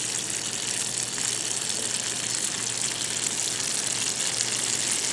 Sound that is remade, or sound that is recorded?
recorded